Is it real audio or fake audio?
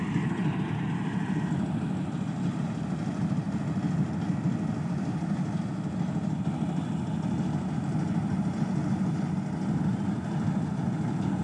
real